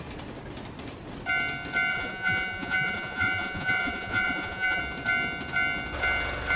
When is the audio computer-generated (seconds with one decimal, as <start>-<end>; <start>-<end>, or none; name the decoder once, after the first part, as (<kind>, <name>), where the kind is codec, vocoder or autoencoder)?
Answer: 1.9-4.8 (vocoder, Vocos)